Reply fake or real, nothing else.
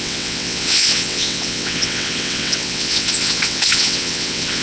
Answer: fake